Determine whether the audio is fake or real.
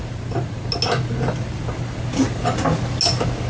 real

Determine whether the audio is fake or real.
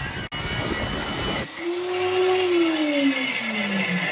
real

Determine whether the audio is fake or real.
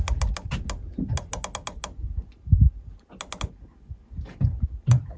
real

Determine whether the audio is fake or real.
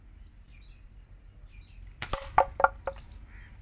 real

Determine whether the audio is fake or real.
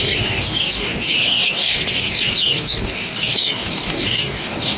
fake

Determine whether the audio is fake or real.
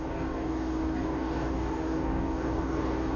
fake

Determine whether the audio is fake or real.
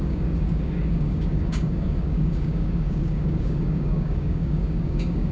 fake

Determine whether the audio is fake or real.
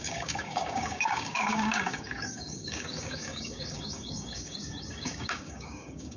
fake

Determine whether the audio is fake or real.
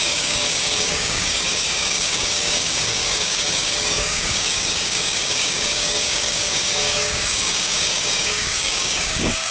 fake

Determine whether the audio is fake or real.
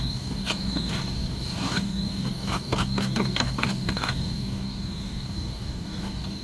fake